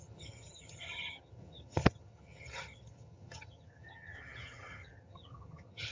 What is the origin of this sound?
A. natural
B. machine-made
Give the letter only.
B